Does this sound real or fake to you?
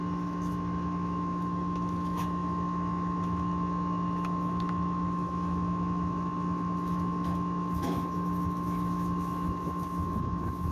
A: fake